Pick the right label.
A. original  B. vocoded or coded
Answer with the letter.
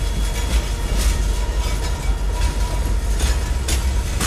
A